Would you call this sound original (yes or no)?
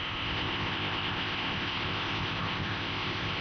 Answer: no